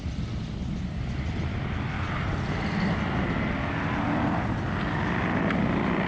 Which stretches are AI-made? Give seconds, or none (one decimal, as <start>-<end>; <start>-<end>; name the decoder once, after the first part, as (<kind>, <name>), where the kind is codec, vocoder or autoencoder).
none